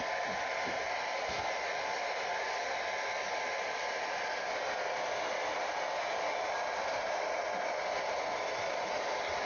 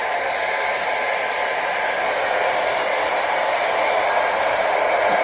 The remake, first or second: second